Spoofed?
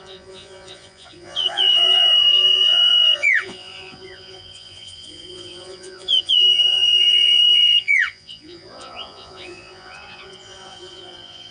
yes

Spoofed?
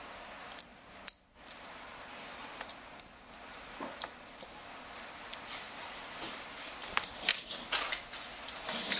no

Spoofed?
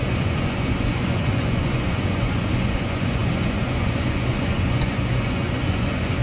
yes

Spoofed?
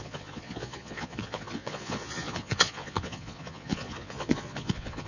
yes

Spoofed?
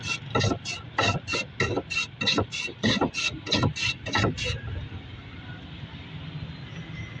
no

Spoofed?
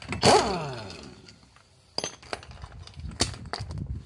no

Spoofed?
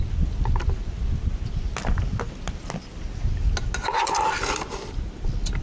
no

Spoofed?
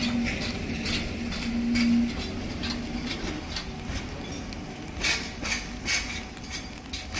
no